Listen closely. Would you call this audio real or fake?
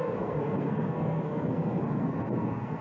fake